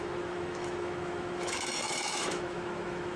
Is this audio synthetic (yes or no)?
yes